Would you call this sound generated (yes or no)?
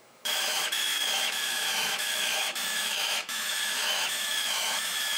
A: yes